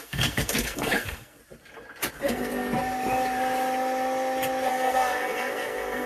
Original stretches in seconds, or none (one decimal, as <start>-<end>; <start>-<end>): 1.4-2.1; 2.5-4.7